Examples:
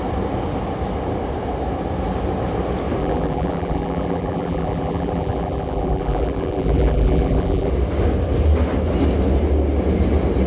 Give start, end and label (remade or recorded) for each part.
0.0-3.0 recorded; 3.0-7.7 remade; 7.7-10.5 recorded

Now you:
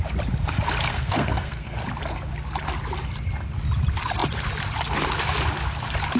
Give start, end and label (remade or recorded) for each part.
0.0-0.9 recorded; 0.9-1.8 remade; 1.8-6.2 recorded